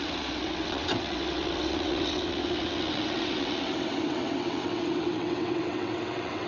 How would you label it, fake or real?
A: fake